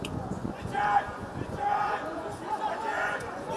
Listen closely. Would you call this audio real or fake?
fake